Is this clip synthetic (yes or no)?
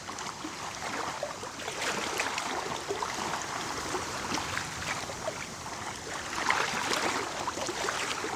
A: no